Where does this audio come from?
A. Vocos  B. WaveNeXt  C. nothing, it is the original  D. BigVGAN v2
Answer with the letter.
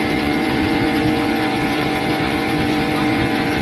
A